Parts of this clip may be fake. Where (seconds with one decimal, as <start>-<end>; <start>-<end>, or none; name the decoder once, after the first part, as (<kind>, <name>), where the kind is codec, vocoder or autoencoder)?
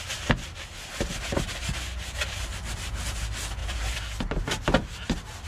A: 3.6-5.1 (vocoder, BigVGAN v2)